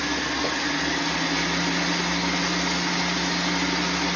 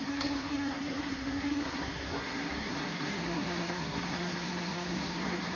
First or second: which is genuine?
first